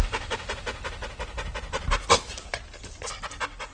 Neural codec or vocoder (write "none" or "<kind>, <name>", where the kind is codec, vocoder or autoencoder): none